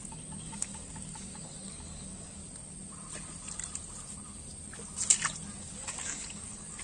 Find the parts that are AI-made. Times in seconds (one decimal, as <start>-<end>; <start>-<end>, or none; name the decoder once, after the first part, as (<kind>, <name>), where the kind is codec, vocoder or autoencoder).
0.0-2.4 (codec, DAC); 5.6-6.8